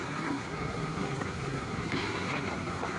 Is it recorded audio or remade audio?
remade